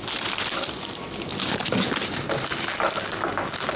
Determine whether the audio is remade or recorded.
recorded